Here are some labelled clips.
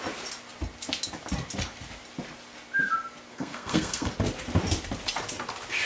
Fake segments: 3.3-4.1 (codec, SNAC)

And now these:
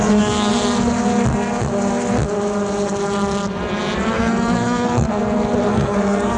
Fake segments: 0.0-0.5 (codec, SNAC); 4.1-5.2; 5.7-6.4